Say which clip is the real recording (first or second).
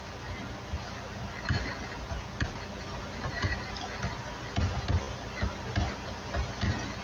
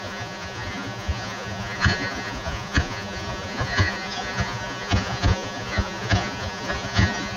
first